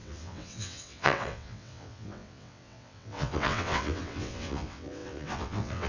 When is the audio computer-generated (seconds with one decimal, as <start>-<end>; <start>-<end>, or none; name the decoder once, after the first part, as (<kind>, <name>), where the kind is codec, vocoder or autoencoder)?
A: 0.0-5.9 (vocoder, WaveNeXt)